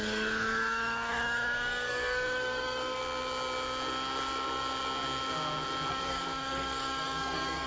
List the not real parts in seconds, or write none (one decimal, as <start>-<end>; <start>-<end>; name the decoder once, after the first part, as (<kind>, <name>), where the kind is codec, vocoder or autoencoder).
0.0-3.0 (codec, DAC); 5.9-7.7